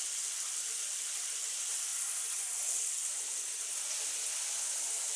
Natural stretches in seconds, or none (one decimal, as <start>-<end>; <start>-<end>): 0.0-5.2